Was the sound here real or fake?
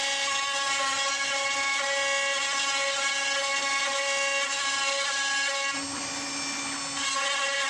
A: real